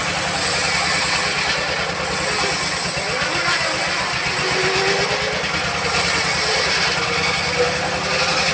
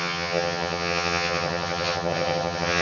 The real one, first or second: first